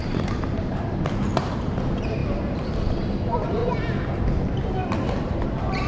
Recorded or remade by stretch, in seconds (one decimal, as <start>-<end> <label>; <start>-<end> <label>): 0.0-2.2 remade; 2.2-3.0 recorded; 3.0-3.6 remade; 3.6-4.1 recorded; 4.1-5.9 remade